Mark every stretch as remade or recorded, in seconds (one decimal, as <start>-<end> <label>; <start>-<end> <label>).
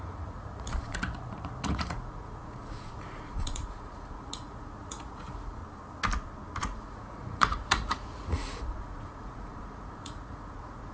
0.0-5.6 remade; 5.6-6.6 recorded; 6.6-10.9 remade